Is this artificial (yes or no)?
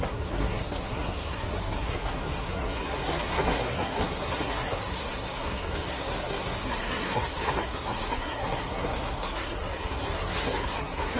yes